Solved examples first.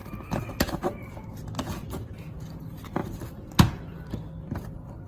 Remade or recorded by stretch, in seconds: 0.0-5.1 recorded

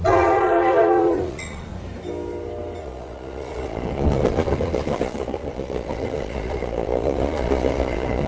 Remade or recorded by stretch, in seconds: 0.0-1.7 remade; 1.7-2.8 recorded; 2.8-8.3 remade

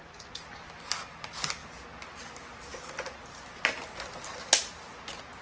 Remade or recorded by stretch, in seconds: 0.0-5.4 recorded

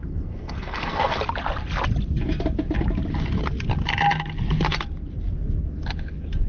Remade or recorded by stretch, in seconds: 0.0-1.2 remade; 1.2-6.5 recorded

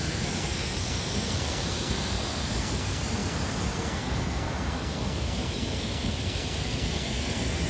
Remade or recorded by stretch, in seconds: 0.0-7.7 remade